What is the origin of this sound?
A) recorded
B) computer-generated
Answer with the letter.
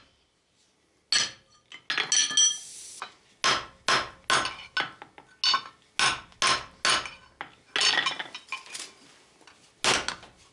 A